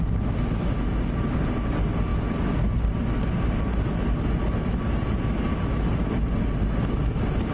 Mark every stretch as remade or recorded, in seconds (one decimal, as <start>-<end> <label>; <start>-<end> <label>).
0.0-7.5 recorded